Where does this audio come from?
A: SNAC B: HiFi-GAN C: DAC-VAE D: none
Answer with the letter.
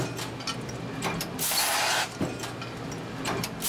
D